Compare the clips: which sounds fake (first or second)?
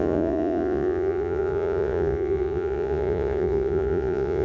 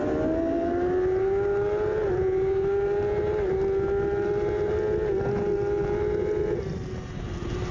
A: first